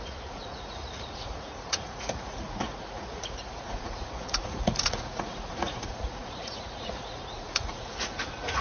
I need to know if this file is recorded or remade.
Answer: remade